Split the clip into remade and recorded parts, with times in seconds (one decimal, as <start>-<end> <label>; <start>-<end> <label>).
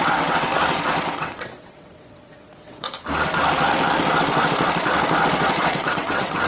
0.0-0.5 remade; 0.5-1.2 recorded; 1.2-2.9 remade; 2.9-5.6 recorded; 5.6-6.5 remade